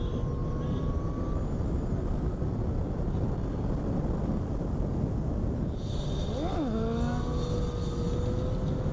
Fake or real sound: real